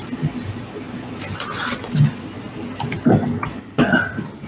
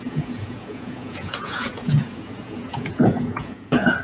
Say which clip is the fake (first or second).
second